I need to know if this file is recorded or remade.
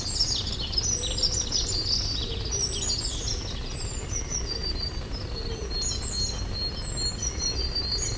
recorded